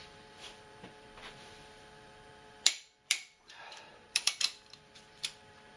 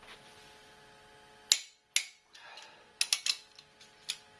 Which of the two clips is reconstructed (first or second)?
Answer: first